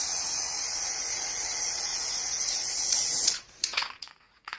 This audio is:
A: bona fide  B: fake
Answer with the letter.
B